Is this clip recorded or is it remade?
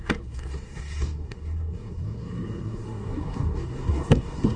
remade